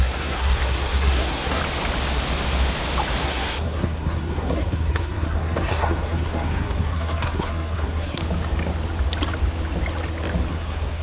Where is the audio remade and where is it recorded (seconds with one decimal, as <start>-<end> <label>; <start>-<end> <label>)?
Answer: 0.0-1.6 remade; 1.6-3.2 recorded; 3.2-8.2 remade; 8.2-10.5 recorded; 10.5-11.0 remade